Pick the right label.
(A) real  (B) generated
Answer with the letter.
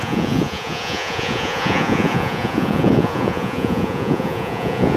B